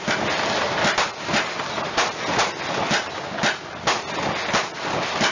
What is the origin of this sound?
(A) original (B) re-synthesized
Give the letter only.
A